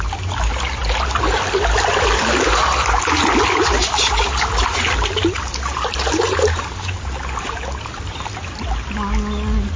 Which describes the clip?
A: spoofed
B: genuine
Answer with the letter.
B